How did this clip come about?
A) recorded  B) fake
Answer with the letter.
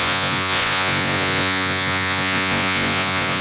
B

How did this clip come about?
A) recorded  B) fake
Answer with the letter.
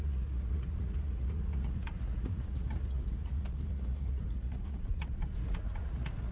B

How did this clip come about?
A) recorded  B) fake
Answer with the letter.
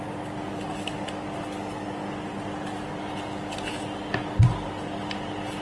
A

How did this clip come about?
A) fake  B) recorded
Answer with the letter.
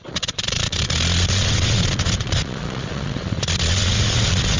A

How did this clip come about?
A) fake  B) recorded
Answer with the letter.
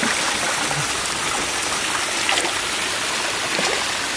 B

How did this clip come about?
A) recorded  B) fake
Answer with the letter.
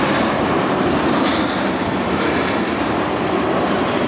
A